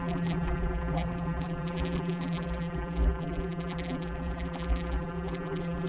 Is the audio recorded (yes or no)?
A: no